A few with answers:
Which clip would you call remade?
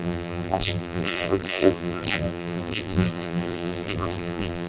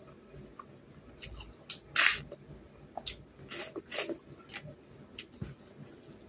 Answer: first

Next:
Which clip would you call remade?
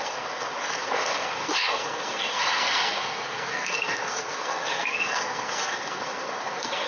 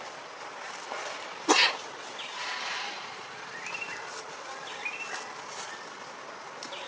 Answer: first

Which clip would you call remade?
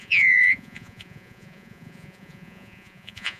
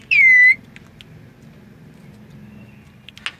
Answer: first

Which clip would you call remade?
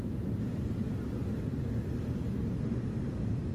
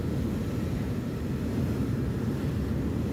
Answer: first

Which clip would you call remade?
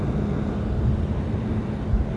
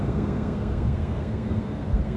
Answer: second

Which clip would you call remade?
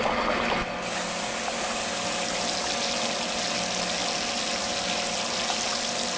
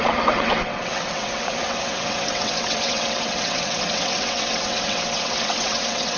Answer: second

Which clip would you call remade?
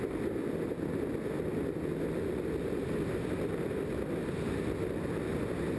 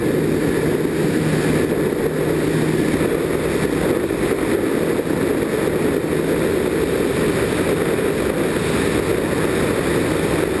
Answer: first